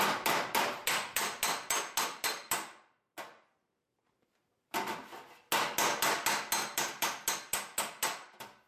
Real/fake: real